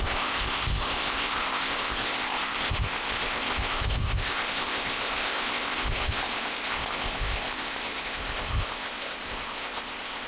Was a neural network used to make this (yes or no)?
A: yes